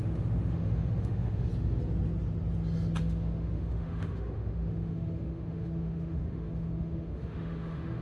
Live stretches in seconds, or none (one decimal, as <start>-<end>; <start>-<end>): 1.5-3.0